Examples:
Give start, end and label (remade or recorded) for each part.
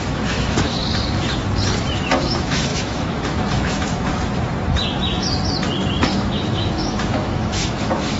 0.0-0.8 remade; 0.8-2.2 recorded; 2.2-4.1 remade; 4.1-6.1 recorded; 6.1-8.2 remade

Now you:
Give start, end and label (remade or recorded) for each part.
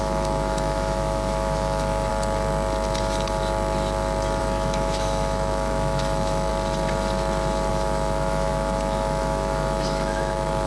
0.0-2.1 remade; 2.1-4.4 recorded; 4.4-6.5 remade; 6.5-7.7 recorded; 7.7-10.7 remade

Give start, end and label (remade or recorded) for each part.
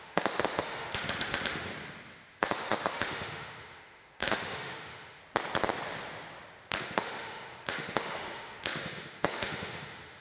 0.0-1.7 remade; 1.7-2.3 recorded; 2.3-5.2 remade; 5.2-6.8 recorded; 6.8-10.2 remade